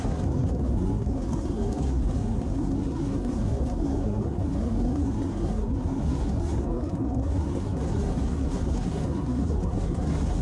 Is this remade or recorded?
remade